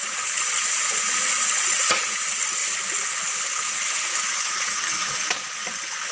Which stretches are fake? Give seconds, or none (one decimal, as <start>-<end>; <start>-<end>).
4.1-5.2